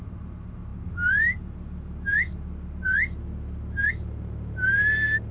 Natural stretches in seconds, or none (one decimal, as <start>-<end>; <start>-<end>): 0.0-5.3